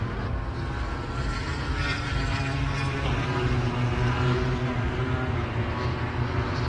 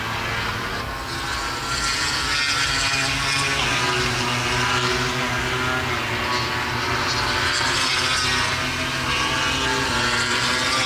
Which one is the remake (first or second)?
first